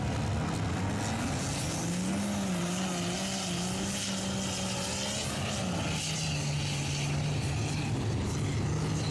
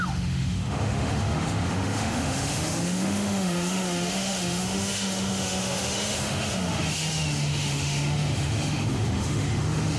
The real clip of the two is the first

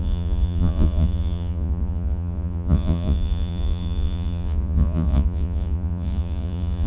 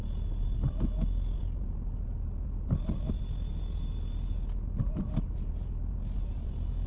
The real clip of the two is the second